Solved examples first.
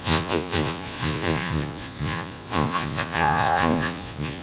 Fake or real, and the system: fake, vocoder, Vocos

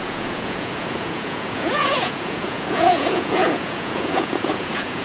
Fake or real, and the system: fake, vocoder, Vocos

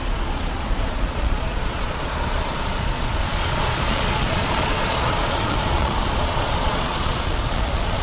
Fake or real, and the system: fake, vocoder, Vocos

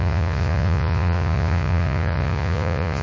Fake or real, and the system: fake, vocoder, Vocos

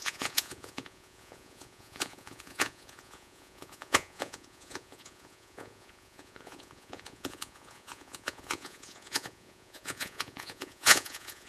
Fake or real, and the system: fake, vocoder, Vocos